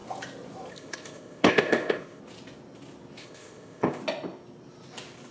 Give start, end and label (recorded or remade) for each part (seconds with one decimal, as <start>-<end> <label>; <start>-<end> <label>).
0.0-0.7 recorded; 0.7-2.2 remade; 2.2-3.2 recorded; 3.2-4.0 remade; 4.0-5.3 recorded